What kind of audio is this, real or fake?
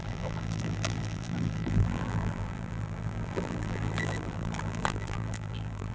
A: fake